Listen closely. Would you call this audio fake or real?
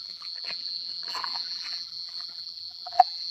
fake